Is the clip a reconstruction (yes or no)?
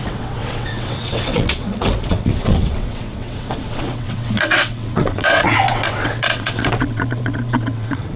yes